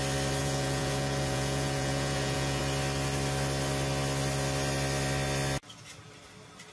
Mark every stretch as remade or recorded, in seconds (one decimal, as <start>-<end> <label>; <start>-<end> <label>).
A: 0.0-0.4 recorded; 0.4-2.6 remade; 2.6-6.7 recorded